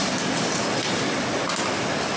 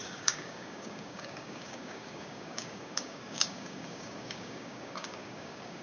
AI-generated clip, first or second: second